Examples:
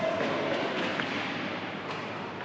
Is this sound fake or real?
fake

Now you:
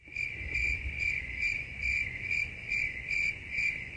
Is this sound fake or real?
fake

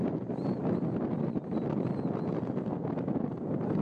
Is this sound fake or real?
real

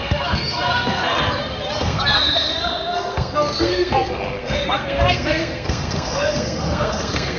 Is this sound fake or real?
fake